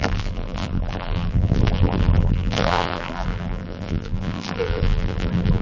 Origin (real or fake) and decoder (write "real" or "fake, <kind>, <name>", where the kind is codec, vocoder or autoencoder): fake, vocoder, BigVGAN v2